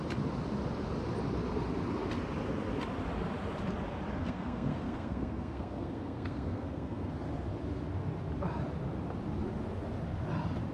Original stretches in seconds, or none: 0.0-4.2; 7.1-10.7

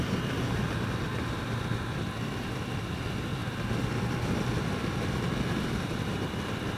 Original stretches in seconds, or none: 3.4-5.5